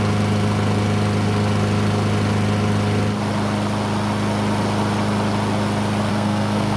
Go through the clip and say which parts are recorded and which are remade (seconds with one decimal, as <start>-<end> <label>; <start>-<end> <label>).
0.0-6.1 recorded; 6.1-6.8 remade